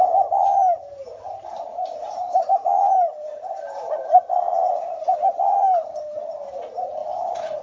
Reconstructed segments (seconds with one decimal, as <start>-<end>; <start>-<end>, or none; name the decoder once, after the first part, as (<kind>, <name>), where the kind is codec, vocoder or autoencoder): 0.0-7.0 (vocoder, BigVGAN v2)